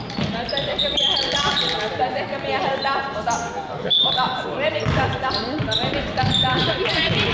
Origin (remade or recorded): recorded